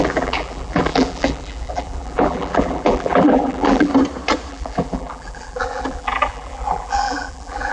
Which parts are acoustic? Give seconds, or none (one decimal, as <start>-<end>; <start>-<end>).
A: 3.9-4.5